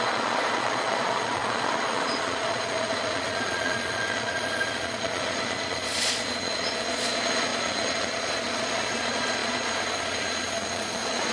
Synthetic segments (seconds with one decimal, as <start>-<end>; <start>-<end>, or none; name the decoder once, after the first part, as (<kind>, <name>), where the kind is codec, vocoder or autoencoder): 0.0-11.3 (vocoder, Vocos)